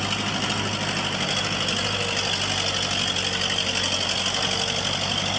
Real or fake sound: real